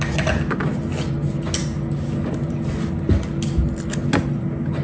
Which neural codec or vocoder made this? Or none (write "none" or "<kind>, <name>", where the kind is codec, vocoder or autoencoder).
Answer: none